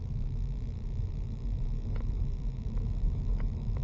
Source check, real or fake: fake